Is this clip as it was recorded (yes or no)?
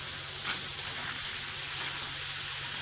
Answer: yes